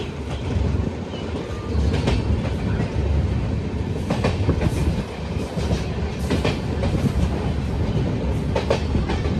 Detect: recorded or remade recorded